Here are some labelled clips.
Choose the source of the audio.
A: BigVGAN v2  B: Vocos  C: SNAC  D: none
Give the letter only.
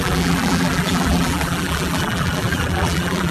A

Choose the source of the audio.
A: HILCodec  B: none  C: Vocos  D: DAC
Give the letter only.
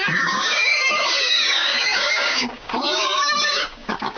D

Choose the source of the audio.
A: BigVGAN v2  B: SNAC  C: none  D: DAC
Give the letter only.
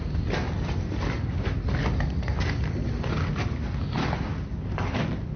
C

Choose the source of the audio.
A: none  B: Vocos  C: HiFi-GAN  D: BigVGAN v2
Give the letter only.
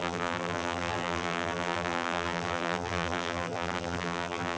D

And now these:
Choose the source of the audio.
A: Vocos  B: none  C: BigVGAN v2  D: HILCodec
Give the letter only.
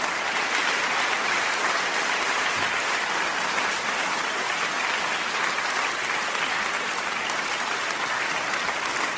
B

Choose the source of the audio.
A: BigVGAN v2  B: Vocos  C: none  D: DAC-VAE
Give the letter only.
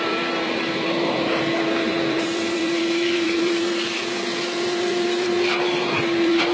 A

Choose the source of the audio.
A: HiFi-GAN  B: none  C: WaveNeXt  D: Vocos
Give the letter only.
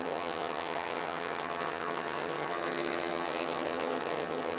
A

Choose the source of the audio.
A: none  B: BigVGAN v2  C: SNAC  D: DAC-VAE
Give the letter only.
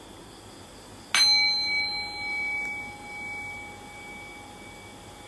A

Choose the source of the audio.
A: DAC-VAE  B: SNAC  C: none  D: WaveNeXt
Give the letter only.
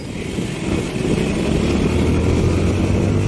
C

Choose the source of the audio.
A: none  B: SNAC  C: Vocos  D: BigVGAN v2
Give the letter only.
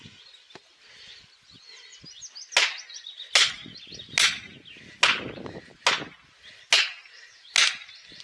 A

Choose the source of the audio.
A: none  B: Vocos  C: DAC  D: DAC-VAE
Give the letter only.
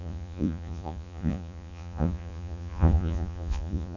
B